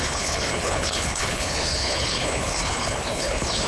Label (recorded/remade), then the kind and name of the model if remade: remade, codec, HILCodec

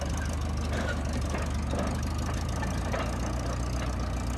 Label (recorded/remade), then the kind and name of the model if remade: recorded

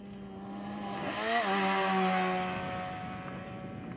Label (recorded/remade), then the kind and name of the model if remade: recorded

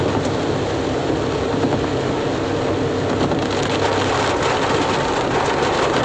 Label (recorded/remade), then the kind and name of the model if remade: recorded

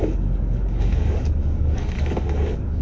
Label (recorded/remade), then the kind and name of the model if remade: remade, codec, DAC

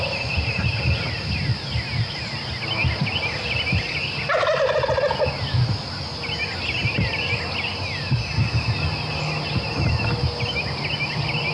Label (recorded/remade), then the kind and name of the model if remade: recorded